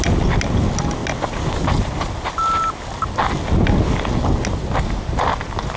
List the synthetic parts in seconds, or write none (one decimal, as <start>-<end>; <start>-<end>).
none